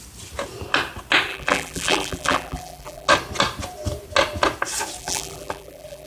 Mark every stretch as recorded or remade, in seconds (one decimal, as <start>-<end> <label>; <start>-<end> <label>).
0.0-1.3 recorded; 1.3-3.1 remade; 3.1-5.0 recorded; 5.0-6.1 remade